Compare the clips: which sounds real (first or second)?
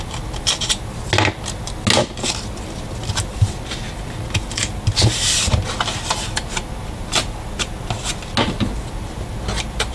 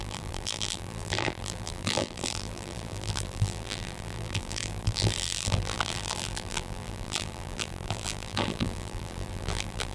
first